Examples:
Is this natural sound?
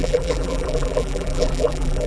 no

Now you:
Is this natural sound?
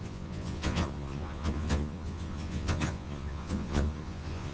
no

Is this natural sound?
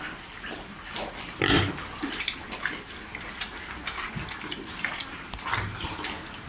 yes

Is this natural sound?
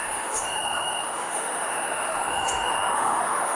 no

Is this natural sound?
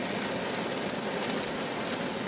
yes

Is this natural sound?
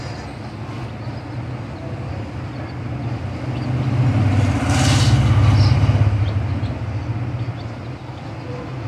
yes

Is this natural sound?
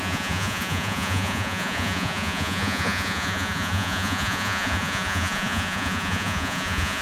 no